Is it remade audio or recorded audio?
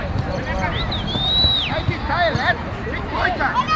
recorded